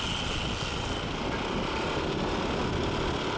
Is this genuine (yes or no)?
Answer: yes